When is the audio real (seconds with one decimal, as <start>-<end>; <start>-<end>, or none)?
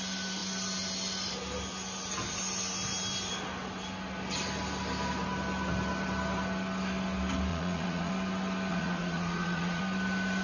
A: 0.0-7.5; 8.1-8.7; 9.8-10.4